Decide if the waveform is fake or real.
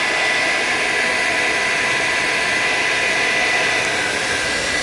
real